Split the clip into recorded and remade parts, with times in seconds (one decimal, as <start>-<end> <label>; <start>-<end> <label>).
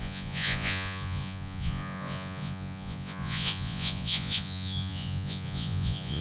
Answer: 0.0-6.2 remade